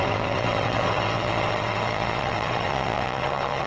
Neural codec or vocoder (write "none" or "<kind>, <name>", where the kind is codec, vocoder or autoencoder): vocoder, WaveNeXt